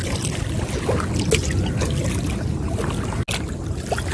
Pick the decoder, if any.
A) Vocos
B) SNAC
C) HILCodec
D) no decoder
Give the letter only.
D